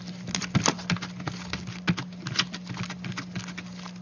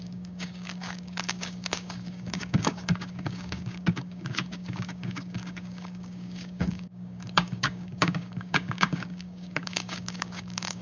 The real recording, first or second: first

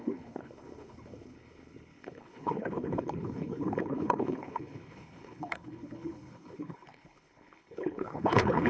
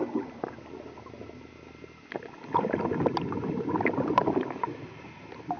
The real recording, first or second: second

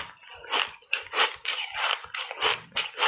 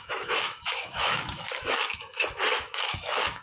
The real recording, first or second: first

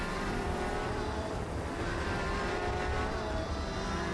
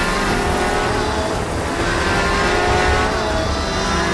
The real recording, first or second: second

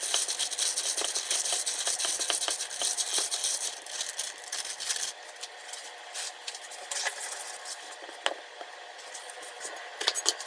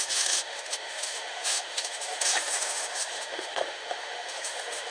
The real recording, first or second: first